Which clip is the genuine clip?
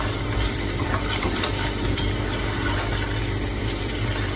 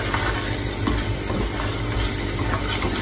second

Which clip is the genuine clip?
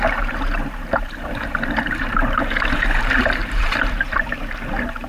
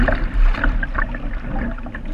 second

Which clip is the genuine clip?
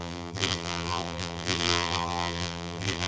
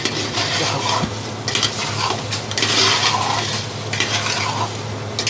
second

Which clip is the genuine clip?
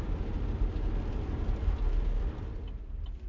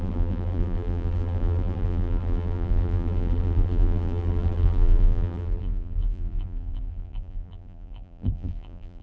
first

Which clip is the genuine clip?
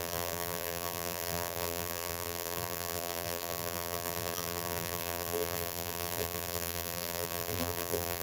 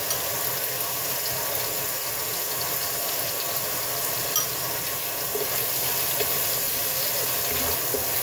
second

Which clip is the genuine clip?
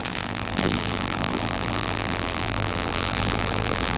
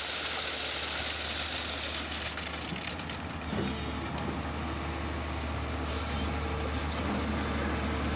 second